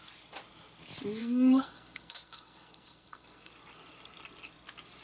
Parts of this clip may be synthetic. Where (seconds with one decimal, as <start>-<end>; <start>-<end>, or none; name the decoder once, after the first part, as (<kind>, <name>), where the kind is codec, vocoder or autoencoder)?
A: 1.2-3.5 (codec, SNAC)